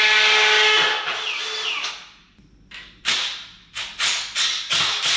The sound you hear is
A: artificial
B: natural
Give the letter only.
B